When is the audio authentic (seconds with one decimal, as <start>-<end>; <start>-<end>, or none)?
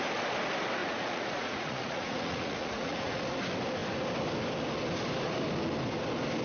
0.0-0.8; 3.2-6.4